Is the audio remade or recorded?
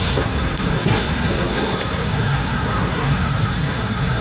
remade